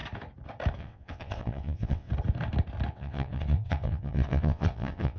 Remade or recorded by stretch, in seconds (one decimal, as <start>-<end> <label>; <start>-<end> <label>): 0.0-0.8 recorded; 0.8-2.1 remade; 2.1-2.9 recorded; 2.9-5.2 remade